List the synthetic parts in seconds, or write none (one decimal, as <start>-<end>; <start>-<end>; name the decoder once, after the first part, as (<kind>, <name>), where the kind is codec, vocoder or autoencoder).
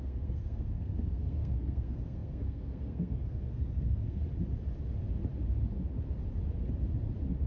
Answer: 0.0-4.2 (codec, SNAC)